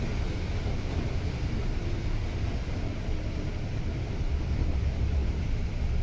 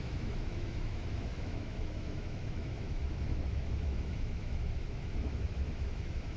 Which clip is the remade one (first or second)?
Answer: second